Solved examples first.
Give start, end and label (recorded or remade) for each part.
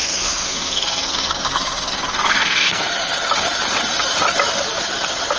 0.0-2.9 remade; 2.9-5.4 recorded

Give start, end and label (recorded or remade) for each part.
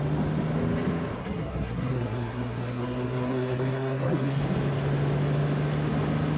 0.0-1.2 recorded; 1.2-4.4 remade; 4.4-6.4 recorded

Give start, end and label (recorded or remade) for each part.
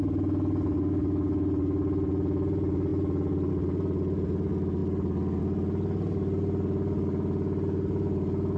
0.0-8.6 recorded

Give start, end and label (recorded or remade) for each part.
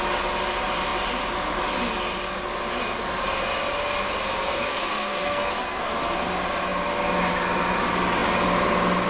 0.0-4.6 recorded; 4.6-5.9 remade; 5.9-9.1 recorded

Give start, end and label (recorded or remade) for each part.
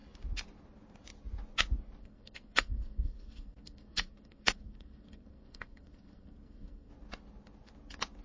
0.0-2.0 recorded; 2.0-6.9 remade; 6.9-8.2 recorded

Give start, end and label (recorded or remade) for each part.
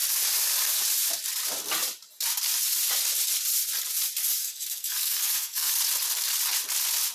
0.0-4.4 recorded; 4.4-5.7 remade; 5.7-7.1 recorded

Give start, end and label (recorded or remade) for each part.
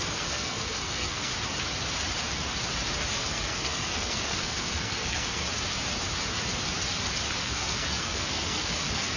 0.0-1.3 remade; 1.3-3.1 recorded; 3.1-5.4 remade; 5.4-7.4 recorded; 7.4-9.2 remade